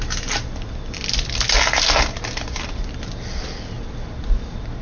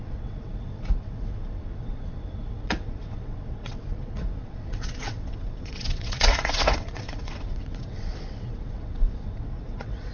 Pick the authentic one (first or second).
first